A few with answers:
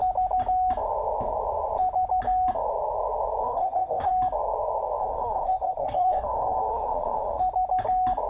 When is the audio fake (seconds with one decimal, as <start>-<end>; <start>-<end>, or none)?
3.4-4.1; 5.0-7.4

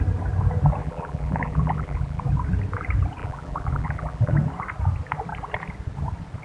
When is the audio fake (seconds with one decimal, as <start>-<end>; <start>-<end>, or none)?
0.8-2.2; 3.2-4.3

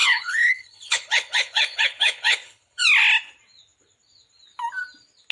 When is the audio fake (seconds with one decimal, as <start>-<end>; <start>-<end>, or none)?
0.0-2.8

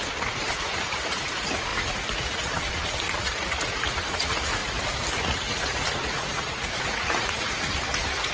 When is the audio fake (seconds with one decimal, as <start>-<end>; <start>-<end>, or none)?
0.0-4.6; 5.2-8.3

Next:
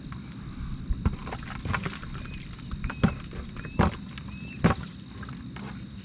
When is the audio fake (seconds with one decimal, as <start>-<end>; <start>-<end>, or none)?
none

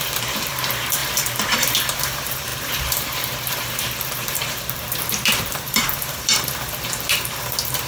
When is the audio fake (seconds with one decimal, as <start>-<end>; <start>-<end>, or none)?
0.0-7.9

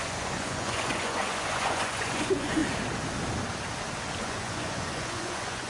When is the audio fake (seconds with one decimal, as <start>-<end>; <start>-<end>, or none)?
0.0-2.6; 4.2-5.7